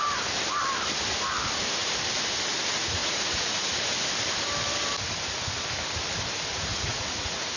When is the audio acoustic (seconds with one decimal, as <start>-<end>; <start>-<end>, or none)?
0.0-3.0; 3.7-6.5